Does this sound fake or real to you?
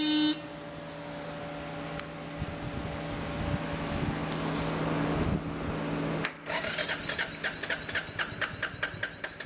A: real